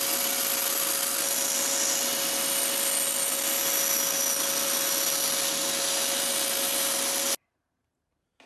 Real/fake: real